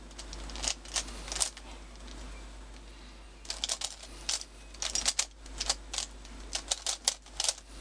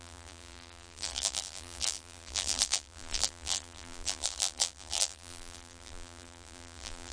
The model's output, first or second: second